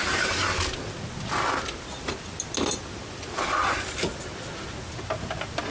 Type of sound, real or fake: real